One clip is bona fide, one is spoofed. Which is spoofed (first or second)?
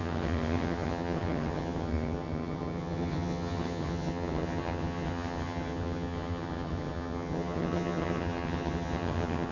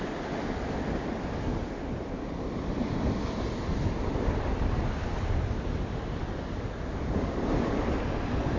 first